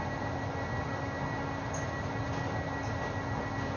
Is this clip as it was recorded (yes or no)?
yes